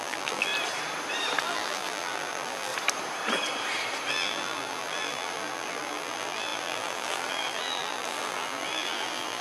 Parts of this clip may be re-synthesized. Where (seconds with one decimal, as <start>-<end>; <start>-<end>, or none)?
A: 0.0-0.5; 1.4-2.7; 4.1-9.4